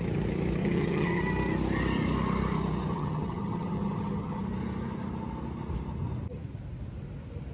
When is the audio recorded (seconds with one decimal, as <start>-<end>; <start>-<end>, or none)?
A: 0.0-0.6; 1.2-2.9; 4.4-7.5